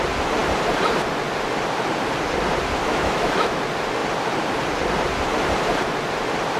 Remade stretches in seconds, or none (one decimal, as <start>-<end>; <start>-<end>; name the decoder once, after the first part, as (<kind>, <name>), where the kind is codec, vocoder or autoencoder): 2.8-3.6 (autoencoder, DAC-VAE)

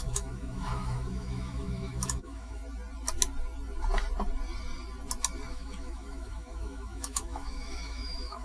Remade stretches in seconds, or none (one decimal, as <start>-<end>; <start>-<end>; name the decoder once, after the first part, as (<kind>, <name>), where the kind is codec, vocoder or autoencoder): 0.0-2.6 (autoencoder, DAC-VAE); 5.5-8.4

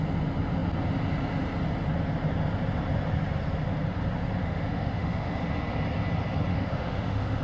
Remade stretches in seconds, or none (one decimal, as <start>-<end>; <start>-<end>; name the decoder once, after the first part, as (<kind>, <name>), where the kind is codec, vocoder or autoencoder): 4.4-5.3 (autoencoder, DAC-VAE); 6.5-7.4